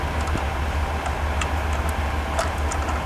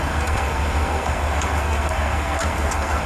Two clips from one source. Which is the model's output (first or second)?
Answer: second